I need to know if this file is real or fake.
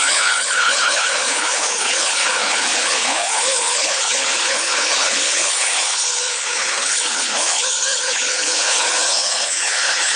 fake